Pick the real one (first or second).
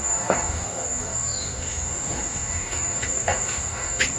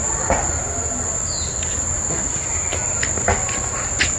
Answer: second